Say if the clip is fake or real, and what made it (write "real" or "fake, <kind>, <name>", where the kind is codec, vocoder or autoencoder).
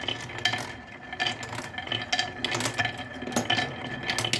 real